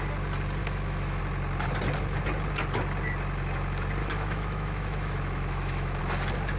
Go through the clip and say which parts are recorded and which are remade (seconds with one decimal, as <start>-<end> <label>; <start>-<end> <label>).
0.0-0.6 recorded; 0.6-1.2 remade; 1.2-4.0 recorded; 4.0-6.0 remade; 6.0-6.6 recorded